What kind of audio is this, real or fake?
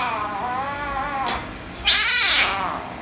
real